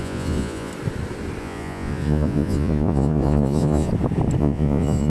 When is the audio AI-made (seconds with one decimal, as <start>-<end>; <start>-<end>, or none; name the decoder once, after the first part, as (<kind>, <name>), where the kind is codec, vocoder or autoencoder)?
0.0-0.7 (vocoder, Vocos); 1.4-3.9; 4.4-5.1